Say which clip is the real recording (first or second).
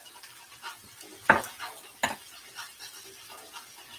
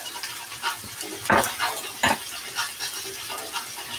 first